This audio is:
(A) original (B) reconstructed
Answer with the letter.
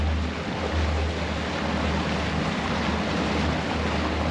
A